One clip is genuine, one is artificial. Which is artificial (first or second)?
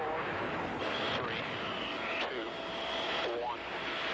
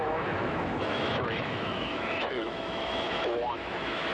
second